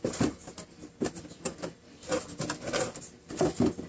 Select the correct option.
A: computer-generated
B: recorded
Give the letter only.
B